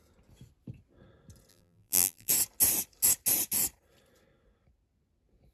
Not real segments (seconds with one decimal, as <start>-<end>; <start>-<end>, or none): 1.5-2.3